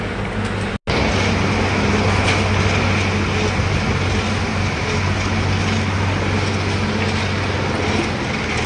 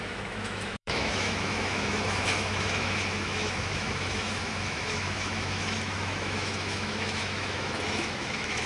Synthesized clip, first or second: second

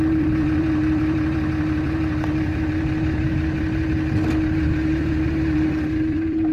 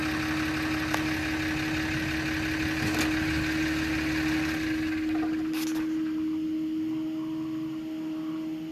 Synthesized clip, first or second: first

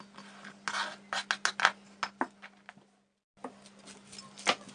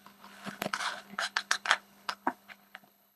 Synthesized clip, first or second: second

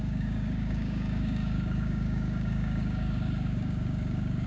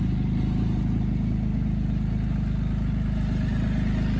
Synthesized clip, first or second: first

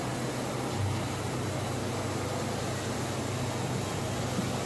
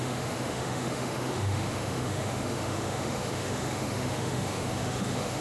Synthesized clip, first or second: second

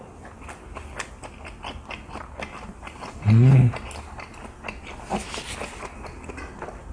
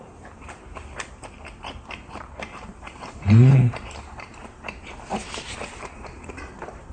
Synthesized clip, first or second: second